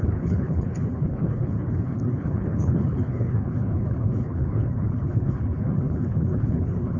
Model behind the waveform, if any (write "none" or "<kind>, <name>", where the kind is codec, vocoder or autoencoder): codec, HILCodec